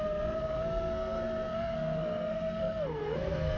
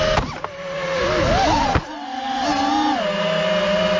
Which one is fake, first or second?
first